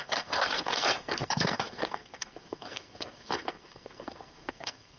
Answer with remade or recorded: remade